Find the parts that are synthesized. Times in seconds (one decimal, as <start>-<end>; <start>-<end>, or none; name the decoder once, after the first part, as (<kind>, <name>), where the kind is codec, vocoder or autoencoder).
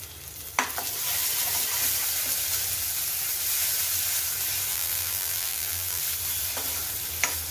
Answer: 4.7-6.0 (vocoder, BigVGAN v2)